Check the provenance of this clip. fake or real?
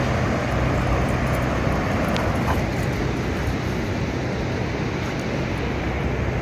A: real